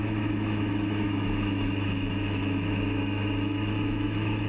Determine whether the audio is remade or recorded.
remade